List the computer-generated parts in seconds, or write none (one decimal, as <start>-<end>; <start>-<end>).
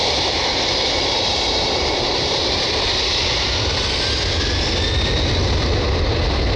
0.0-2.4